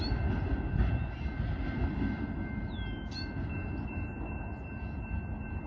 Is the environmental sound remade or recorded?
recorded